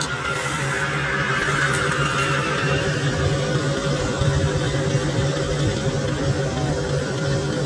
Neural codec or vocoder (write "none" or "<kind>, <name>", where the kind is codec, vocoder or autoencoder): none